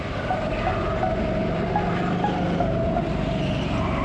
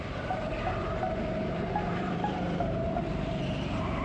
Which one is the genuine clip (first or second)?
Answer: first